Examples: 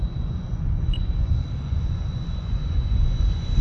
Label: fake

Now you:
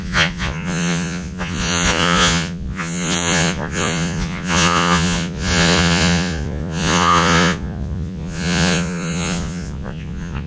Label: fake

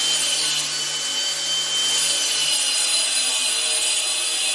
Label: real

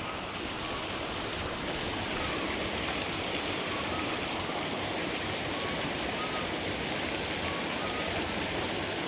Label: real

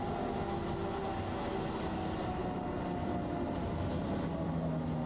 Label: real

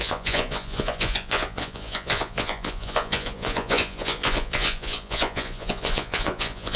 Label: fake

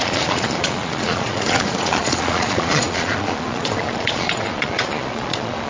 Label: fake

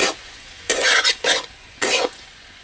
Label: fake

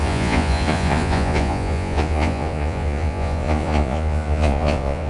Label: fake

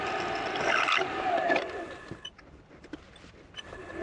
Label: real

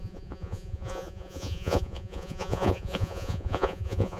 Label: fake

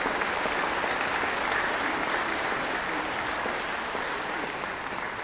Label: real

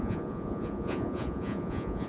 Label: fake